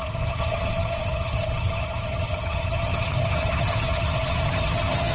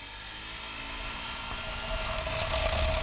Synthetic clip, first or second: first